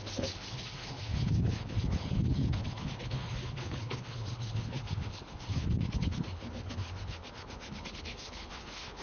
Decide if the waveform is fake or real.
fake